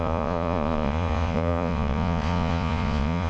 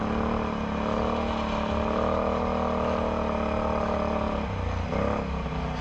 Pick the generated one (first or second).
first